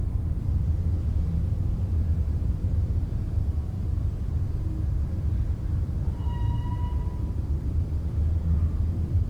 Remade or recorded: remade